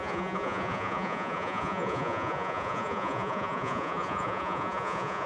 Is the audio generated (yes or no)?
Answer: yes